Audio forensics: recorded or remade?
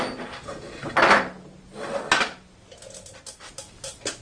recorded